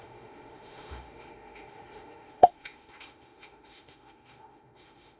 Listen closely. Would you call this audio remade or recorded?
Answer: remade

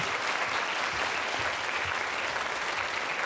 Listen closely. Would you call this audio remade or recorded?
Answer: recorded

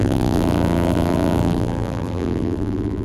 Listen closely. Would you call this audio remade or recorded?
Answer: remade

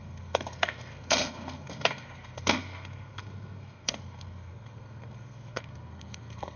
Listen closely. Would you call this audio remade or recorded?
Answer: remade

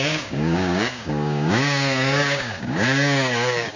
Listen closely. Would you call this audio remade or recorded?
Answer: remade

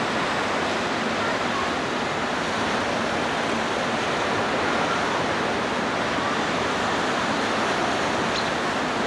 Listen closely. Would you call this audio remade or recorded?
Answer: recorded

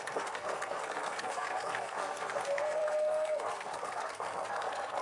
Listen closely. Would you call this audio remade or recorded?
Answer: remade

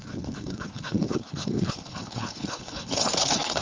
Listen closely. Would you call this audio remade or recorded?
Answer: remade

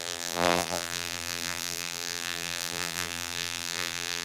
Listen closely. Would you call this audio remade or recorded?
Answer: remade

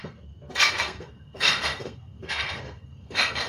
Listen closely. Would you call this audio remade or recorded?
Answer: remade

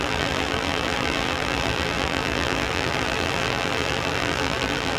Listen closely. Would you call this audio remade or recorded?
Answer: remade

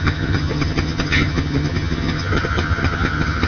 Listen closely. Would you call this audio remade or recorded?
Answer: remade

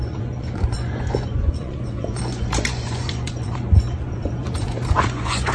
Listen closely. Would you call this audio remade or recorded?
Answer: remade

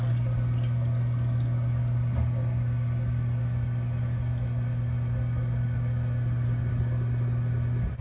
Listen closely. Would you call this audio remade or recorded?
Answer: recorded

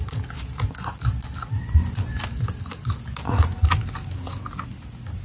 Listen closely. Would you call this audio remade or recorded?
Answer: recorded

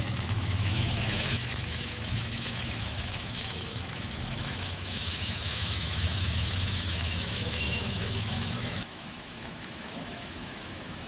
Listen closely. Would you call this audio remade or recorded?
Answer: remade